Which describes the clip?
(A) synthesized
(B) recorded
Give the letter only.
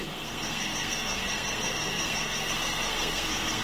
A